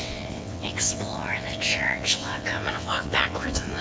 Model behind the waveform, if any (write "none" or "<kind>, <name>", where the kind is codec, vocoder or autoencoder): vocoder, WaveNeXt